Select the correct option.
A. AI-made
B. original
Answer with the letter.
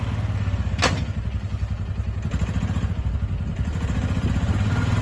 B